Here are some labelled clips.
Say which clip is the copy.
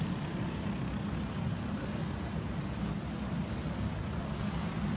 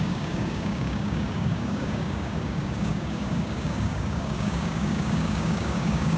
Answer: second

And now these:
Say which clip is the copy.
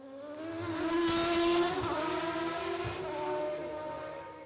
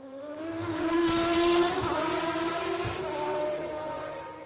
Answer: second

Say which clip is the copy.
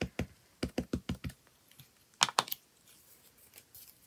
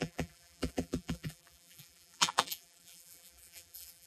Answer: second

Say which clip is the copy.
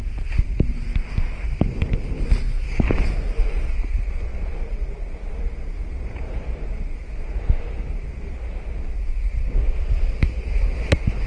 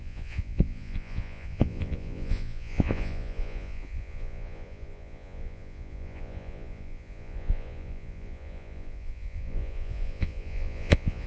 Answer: second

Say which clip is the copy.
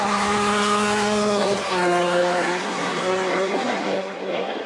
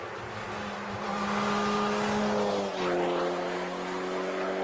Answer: first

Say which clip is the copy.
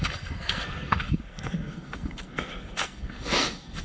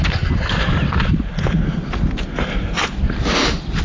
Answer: first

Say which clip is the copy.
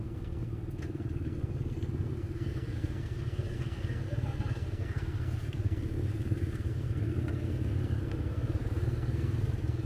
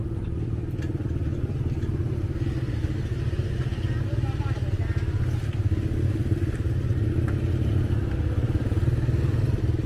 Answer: first